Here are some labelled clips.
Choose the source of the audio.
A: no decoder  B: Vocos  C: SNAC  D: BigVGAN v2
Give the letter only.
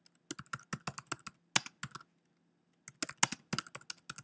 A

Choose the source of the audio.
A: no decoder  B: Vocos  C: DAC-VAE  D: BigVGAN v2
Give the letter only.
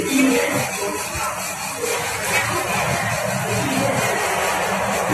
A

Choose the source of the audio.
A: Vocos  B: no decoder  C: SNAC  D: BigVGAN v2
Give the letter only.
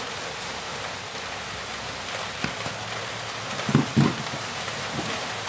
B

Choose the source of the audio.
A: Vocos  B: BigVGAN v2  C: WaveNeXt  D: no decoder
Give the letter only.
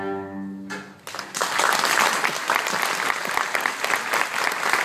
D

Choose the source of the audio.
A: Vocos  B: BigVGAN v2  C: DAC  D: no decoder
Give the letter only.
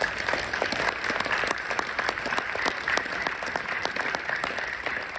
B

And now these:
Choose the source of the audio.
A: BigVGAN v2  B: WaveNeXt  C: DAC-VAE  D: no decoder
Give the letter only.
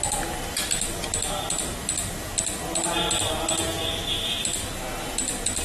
D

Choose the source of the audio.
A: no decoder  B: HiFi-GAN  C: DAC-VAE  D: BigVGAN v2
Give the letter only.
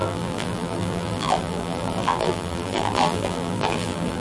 D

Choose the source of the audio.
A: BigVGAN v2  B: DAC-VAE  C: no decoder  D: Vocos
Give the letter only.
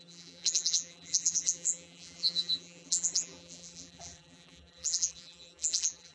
A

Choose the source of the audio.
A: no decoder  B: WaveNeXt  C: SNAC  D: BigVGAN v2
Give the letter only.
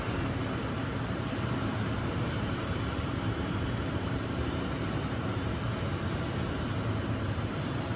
D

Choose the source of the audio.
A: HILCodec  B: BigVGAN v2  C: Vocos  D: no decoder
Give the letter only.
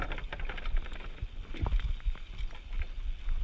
D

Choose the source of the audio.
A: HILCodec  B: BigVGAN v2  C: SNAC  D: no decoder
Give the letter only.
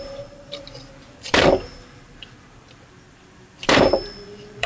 B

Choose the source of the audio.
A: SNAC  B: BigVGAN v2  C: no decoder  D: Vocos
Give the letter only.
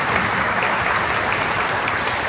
C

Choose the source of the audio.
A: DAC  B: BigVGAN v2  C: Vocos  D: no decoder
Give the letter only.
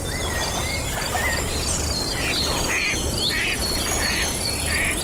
D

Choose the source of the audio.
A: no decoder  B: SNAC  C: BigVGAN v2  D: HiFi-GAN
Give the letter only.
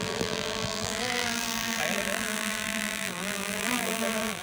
C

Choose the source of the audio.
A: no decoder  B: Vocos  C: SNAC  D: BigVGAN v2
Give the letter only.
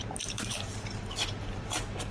D